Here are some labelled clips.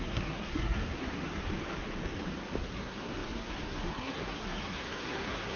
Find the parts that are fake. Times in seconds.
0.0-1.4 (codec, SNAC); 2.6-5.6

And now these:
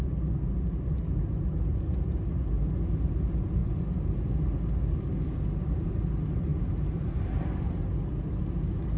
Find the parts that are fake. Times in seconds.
none

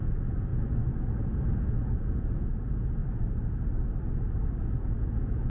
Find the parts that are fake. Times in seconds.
0.0-0.5 (vocoder, Vocos); 1.7-3.0; 4.8-5.5

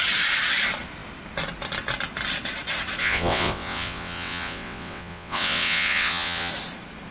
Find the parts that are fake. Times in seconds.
3.0-6.5 (vocoder, WaveNeXt)

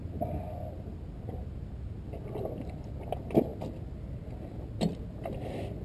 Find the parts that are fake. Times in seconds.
none

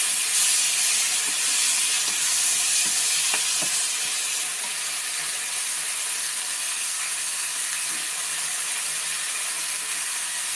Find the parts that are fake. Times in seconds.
6.2-8.1 (codec, SNAC); 9.6-10.6

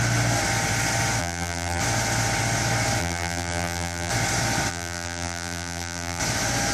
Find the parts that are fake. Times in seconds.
1.2-1.8 (vocoder, BigVGAN v2); 3.0-4.1; 4.7-6.2

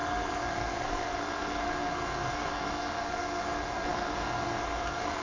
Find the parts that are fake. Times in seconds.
0.0-5.2 (codec, SNAC)